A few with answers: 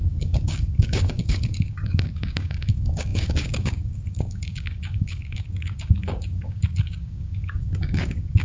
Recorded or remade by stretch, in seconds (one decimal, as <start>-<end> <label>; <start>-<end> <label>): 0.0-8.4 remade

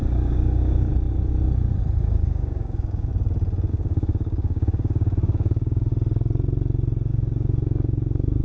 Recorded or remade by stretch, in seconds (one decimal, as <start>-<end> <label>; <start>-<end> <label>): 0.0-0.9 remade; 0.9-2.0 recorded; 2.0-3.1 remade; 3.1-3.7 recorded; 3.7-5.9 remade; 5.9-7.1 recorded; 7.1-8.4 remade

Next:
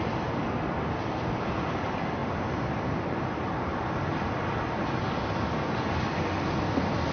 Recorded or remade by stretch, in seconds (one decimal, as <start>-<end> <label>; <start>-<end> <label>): 0.0-7.1 recorded

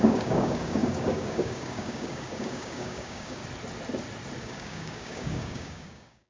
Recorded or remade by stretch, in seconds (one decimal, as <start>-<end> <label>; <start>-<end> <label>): 0.0-3.4 remade; 3.4-4.4 recorded; 4.4-6.3 remade

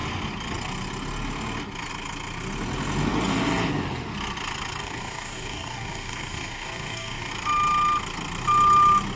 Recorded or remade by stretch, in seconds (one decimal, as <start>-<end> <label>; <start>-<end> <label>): 0.0-4.8 recorded; 4.8-7.3 remade; 7.3-9.2 recorded